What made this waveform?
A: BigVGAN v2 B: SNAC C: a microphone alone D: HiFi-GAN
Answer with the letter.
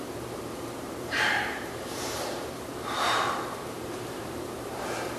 A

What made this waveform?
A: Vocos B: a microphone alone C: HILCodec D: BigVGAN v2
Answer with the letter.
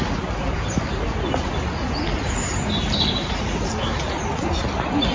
B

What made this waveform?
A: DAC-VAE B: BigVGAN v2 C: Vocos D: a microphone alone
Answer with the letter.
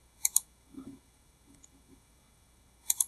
A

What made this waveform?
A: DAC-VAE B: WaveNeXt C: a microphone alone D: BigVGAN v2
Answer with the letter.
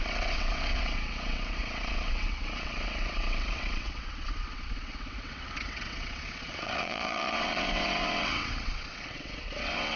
B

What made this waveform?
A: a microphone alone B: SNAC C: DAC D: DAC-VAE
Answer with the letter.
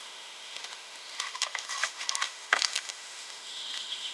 D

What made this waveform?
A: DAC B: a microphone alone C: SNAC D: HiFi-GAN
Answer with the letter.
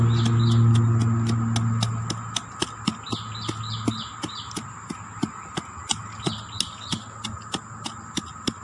B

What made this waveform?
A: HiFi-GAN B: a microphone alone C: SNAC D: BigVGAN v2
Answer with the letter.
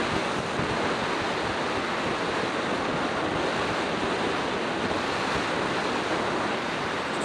B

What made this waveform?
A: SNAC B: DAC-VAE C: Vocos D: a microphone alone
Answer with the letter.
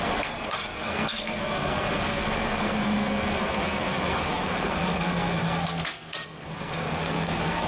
A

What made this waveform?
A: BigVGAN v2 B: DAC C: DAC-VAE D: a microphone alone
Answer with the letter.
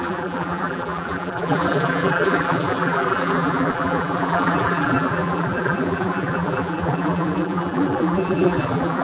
A